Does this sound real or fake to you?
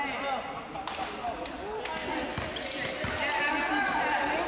real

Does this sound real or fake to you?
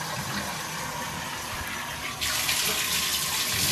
real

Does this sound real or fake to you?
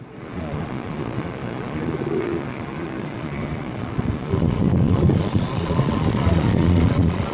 fake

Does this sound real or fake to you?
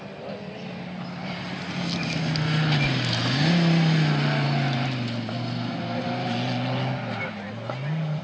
real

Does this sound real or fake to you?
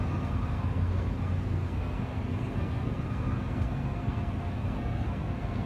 fake